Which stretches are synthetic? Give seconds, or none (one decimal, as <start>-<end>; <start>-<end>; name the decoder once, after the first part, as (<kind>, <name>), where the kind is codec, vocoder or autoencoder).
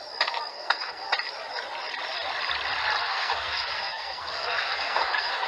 0.5-1.1 (codec, SNAC); 3.0-5.5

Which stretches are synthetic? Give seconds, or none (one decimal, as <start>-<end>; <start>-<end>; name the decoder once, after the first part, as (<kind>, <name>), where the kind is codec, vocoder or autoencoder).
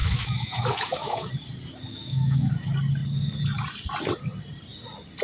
0.0-1.3 (autoencoder, DAC-VAE); 1.9-2.5